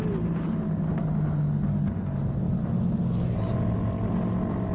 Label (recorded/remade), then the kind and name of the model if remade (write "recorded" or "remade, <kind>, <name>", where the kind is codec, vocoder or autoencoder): recorded